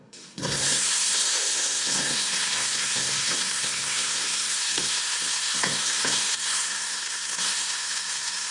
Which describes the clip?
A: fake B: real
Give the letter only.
A